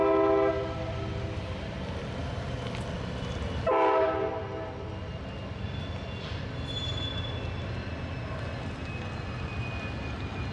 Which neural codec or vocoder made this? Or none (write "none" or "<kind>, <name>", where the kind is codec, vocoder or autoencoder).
none